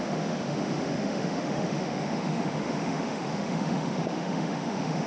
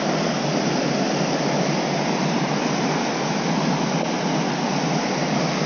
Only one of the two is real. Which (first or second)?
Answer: second